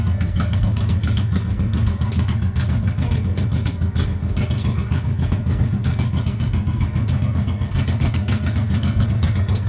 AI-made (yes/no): yes